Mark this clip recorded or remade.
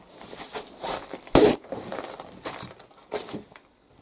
recorded